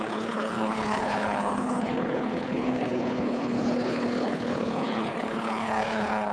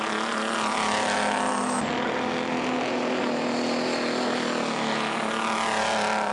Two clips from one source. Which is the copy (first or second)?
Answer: first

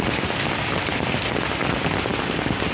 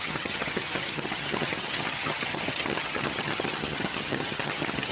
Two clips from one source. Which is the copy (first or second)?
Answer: second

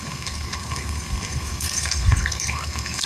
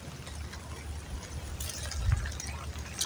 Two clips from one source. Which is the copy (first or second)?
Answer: first